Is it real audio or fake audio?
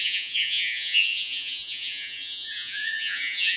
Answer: fake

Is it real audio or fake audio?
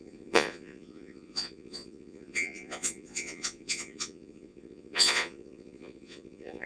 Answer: fake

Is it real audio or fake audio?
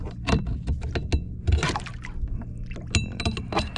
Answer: real